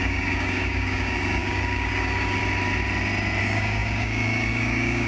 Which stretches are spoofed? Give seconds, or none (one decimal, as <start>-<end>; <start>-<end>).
0.0-2.4; 3.4-5.1

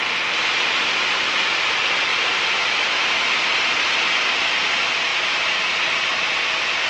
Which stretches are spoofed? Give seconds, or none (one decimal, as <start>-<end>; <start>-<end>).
none

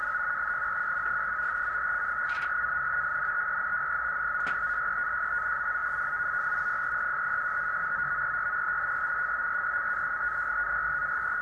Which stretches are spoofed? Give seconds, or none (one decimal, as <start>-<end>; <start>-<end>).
0.0-5.8; 6.4-11.4